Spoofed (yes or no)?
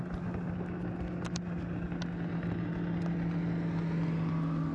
no